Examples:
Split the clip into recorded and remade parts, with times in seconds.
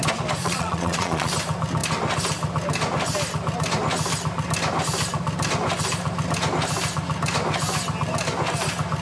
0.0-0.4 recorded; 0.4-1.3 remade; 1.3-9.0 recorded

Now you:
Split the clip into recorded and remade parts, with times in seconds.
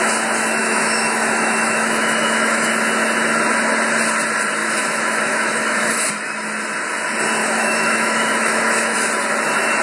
0.0-0.6 recorded; 0.6-2.7 remade; 2.7-4.6 recorded; 4.6-6.1 remade; 6.1-7.4 recorded; 7.4-9.1 remade; 9.1-9.8 recorded